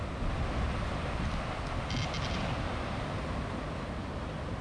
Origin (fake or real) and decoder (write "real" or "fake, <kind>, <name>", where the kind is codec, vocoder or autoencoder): real